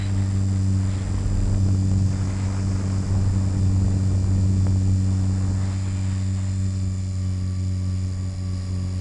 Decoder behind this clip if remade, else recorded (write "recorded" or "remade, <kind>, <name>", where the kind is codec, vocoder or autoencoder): recorded